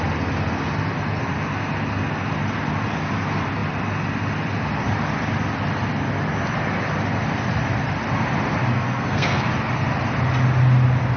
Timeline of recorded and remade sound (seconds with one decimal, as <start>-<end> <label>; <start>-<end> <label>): 0.0-8.7 recorded; 8.7-9.5 remade; 9.5-11.2 recorded